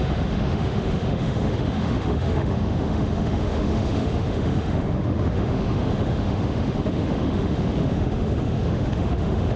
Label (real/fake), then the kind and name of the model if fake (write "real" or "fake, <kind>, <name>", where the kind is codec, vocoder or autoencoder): fake, autoencoder, DAC-VAE